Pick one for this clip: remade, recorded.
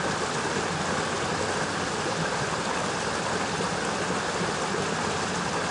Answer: recorded